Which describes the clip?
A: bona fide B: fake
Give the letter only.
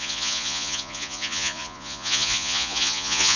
B